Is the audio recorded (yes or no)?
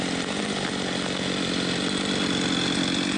yes